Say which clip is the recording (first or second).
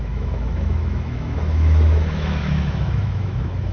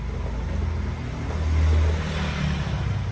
second